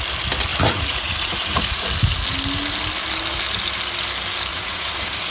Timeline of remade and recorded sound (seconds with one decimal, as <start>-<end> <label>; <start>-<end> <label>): 0.0-0.5 recorded; 0.5-1.8 remade; 1.8-4.5 recorded; 4.5-5.3 remade